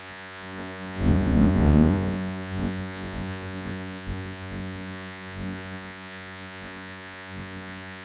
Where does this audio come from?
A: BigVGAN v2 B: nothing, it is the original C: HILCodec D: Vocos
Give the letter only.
D